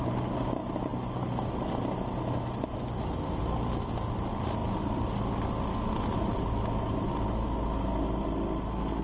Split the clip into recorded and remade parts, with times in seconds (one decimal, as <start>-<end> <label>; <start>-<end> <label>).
0.0-9.0 recorded